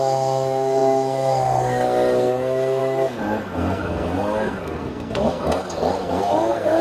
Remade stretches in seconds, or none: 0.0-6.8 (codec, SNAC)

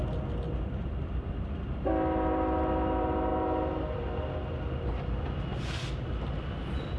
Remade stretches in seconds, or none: none

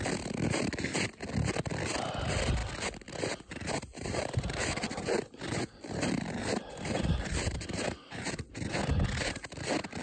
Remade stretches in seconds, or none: 3.9-8.5 (vocoder, BigVGAN v2)